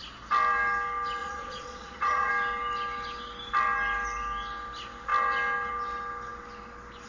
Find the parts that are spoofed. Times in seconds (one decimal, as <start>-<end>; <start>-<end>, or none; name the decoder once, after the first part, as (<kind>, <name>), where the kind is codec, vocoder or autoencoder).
1.2-2.3 (vocoder, Vocos)